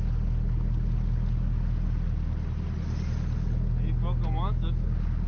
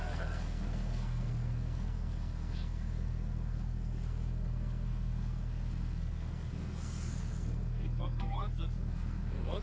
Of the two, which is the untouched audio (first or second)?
first